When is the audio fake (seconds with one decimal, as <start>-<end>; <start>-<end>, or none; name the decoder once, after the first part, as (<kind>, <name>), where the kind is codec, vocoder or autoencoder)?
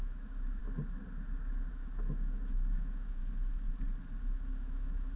0.0-0.6 (autoencoder, DAC-VAE); 1.7-3.2; 4.2-5.2